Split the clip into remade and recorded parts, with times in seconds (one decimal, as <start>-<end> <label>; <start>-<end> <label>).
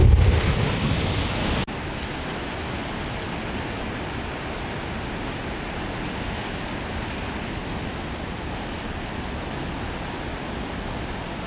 0.0-11.5 recorded